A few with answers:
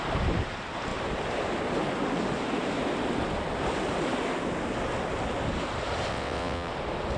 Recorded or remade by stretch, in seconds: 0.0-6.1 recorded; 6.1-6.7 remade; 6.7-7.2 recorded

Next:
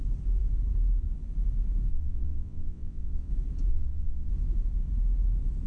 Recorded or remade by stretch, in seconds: 0.0-1.9 recorded; 1.9-3.3 remade; 3.3-3.7 recorded; 3.7-4.3 remade; 4.3-5.7 recorded

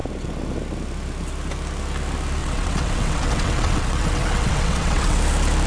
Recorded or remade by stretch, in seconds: 0.0-2.4 recorded; 2.4-5.2 remade; 5.2-5.7 recorded

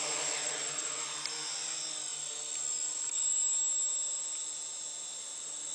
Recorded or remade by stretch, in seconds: 0.0-0.4 recorded; 0.4-1.0 remade; 1.0-5.7 recorded

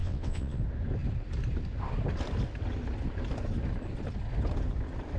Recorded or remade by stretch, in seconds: 0.0-0.6 remade; 0.6-5.2 recorded

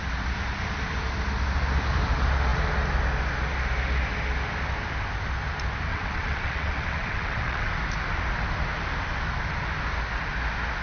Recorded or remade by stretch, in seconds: 0.0-5.9 recorded; 5.9-7.7 remade; 7.7-10.8 recorded

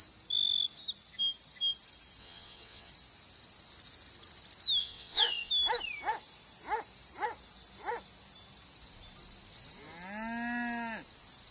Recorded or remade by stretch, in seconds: 0.0-2.2 recorded; 2.2-2.9 remade; 2.9-4.8 recorded; 4.8-5.5 remade; 5.5-11.5 recorded